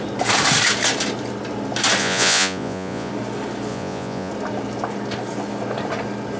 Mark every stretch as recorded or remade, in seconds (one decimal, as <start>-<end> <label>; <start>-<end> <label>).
0.0-2.0 recorded; 2.0-3.1 remade; 3.1-3.7 recorded; 3.7-4.3 remade; 4.3-6.4 recorded